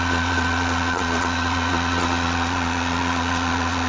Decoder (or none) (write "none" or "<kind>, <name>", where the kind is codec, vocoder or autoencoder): vocoder, Vocos